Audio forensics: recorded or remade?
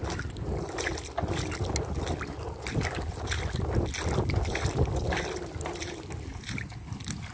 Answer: recorded